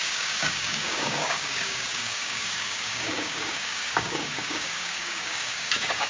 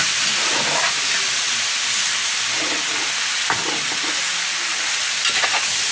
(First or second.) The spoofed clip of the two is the first